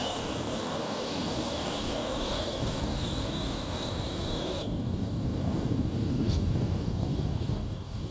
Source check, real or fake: fake